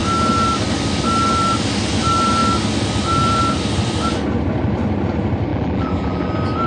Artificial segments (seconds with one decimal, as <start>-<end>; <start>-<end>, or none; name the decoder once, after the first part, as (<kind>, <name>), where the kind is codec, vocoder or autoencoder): 5.5-6.3 (vocoder, BigVGAN v2)